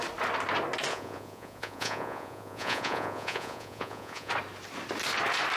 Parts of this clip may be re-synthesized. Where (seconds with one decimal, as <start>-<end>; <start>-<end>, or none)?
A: 0.9-4.3